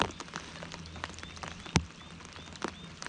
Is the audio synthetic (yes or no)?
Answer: no